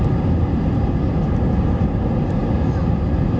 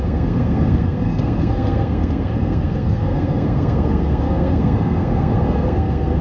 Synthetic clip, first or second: second